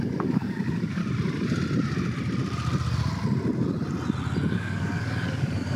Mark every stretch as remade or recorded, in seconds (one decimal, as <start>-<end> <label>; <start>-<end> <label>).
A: 0.0-1.0 remade; 1.0-4.5 recorded; 4.5-5.8 remade